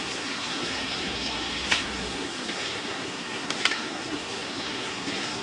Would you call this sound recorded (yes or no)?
no